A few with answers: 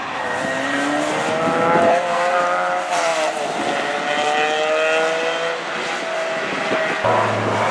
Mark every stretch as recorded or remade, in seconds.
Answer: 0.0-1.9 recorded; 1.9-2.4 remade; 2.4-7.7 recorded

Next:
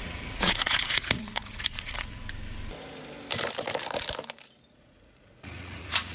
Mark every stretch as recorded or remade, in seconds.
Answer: 0.0-2.2 remade; 2.2-4.7 recorded; 4.7-6.1 remade

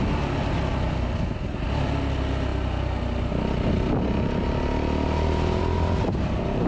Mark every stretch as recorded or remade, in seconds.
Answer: 0.0-6.7 recorded

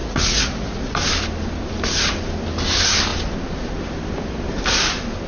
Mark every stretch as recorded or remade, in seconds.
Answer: 0.0-1.0 remade; 1.0-5.3 recorded

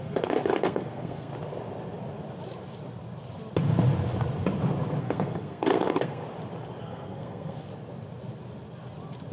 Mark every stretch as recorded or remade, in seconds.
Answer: 0.0-1.3 remade; 1.3-5.0 recorded; 5.0-6.2 remade; 6.2-6.8 recorded; 6.8-7.7 remade; 7.7-9.3 recorded

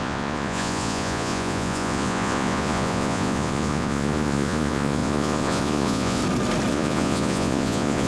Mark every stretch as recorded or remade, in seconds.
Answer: 0.0-6.2 remade; 6.2-6.7 recorded; 6.7-8.1 remade